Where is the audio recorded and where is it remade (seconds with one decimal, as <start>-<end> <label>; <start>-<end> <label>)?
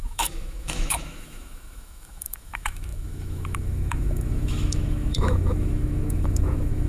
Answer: 0.0-6.9 remade